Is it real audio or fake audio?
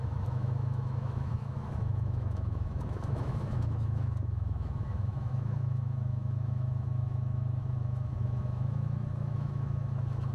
fake